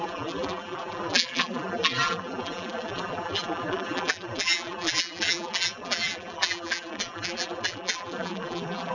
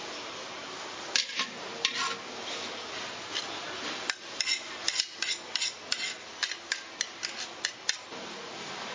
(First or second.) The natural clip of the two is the second